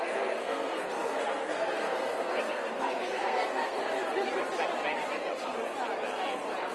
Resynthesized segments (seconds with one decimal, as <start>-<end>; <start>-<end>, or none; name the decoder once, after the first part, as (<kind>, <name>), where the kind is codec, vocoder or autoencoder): 0.0-3.8 (codec, SNAC)